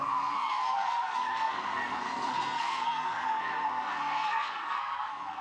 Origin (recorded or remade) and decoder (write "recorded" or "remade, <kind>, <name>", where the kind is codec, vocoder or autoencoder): remade, codec, SNAC